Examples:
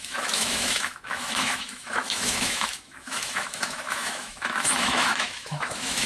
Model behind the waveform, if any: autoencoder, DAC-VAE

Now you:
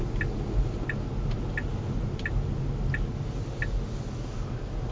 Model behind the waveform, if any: none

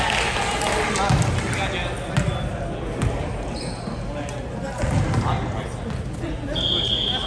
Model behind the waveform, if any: none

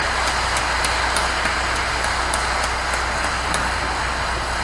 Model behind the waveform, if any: none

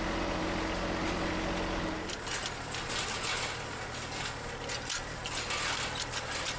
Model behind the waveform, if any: none